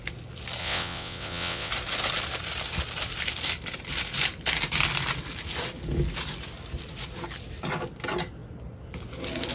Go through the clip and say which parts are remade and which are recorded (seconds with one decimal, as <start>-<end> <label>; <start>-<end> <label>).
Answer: 0.0-0.6 recorded; 0.6-1.7 remade; 1.7-9.5 recorded